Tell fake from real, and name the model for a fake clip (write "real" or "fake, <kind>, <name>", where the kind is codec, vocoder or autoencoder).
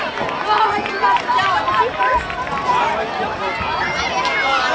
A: real